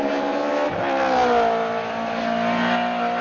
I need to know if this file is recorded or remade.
recorded